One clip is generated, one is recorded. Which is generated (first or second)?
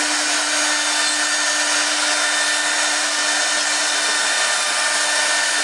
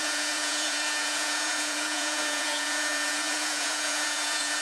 second